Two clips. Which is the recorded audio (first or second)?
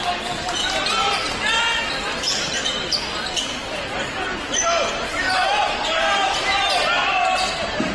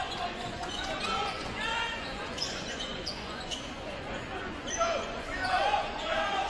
first